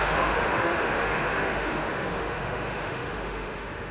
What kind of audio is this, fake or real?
fake